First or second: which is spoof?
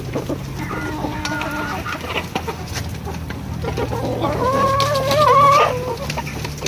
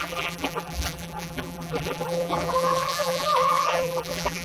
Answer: second